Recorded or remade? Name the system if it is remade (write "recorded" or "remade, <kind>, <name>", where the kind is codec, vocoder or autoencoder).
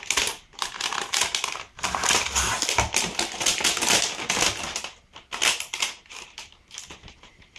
recorded